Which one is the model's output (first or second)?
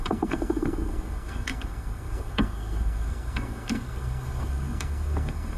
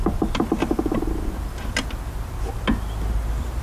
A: first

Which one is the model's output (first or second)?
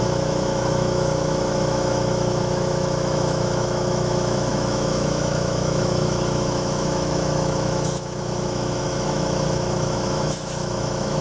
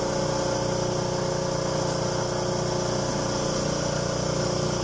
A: first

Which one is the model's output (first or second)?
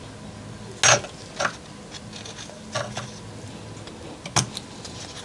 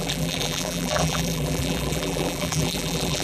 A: second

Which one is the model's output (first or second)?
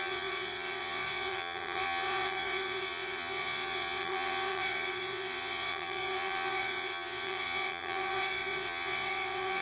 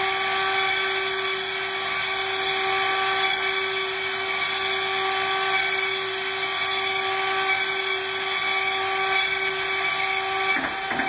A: first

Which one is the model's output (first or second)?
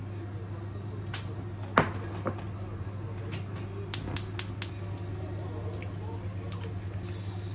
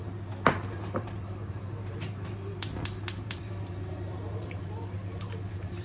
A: second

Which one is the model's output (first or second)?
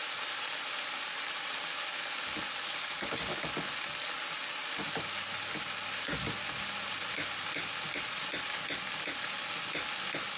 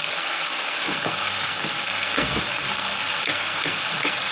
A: second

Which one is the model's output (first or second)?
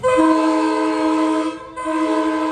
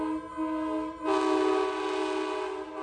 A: first